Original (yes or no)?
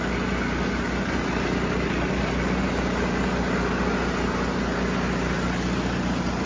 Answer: yes